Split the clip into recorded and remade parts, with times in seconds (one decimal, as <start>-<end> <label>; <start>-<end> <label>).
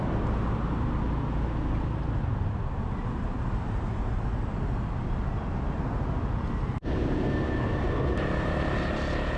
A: 0.0-9.4 recorded